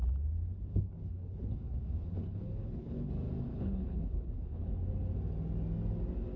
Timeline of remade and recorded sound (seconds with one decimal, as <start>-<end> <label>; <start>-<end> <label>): 0.0-0.7 recorded; 0.7-3.1 remade; 3.1-3.5 recorded; 3.5-4.7 remade; 4.7-6.4 recorded